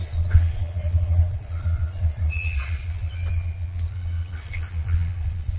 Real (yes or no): no